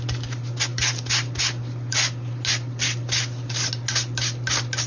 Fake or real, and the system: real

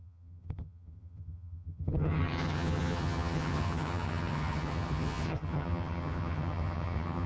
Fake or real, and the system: fake, vocoder, HiFi-GAN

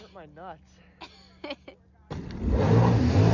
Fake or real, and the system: real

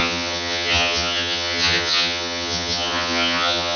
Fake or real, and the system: fake, vocoder, HiFi-GAN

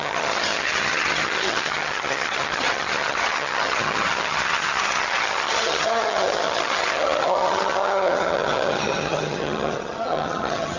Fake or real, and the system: fake, vocoder, HiFi-GAN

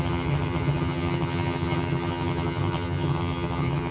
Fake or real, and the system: fake, vocoder, HiFi-GAN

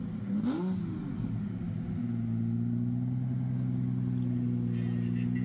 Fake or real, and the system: real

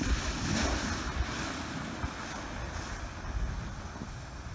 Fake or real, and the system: real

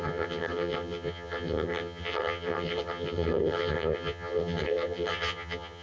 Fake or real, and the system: fake, vocoder, HiFi-GAN